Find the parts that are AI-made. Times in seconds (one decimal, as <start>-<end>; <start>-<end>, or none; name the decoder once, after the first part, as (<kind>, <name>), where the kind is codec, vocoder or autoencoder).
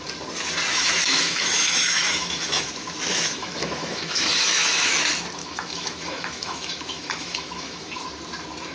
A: 0.7-2.7 (autoencoder, DAC-VAE); 3.1-4.9; 5.4-8.1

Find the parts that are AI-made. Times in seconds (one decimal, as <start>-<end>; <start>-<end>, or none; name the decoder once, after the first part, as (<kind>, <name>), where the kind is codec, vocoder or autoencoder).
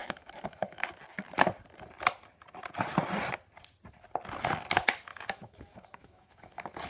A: 0.0-0.9 (autoencoder, DAC-VAE); 5.1-6.9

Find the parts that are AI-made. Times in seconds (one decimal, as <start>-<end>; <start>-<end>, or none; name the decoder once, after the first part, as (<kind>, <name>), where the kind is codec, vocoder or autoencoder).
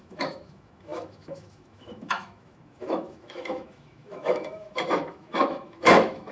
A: 0.0-6.3 (autoencoder, DAC-VAE)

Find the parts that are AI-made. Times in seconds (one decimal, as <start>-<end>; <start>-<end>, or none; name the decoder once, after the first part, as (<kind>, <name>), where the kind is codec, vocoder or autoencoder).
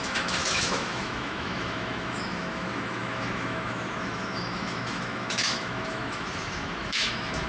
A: 0.0-7.5 (autoencoder, DAC-VAE)